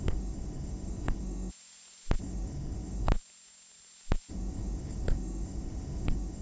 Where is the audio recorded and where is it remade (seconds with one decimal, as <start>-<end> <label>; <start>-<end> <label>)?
0.0-1.5 remade; 1.5-2.2 recorded; 2.2-3.1 remade; 3.1-4.3 recorded; 4.3-6.4 remade